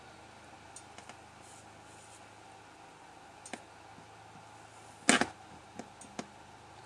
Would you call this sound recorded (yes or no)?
yes